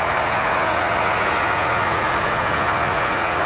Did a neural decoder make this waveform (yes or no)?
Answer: yes